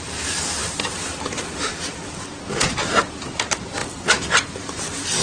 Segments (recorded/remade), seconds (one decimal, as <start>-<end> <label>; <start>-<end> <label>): 0.0-3.8 recorded; 3.8-4.3 remade; 4.3-5.2 recorded